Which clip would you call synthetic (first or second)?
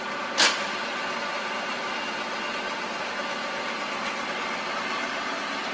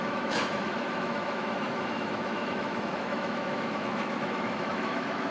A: second